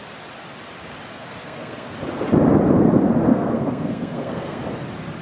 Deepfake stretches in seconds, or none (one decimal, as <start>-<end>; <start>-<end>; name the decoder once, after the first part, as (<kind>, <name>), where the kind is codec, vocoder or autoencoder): 1.1-1.9 (codec, SNAC); 3.3-4.6